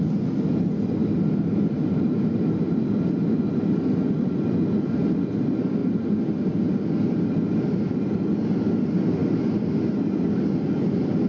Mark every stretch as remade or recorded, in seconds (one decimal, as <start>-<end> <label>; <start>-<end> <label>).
0.0-11.3 recorded